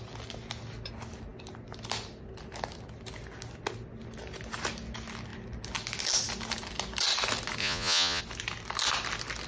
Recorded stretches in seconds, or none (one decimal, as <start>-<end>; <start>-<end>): 0.0-7.6; 8.2-9.5